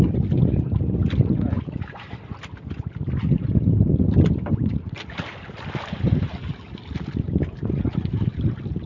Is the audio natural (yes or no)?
yes